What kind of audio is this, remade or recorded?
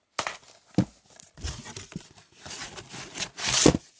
recorded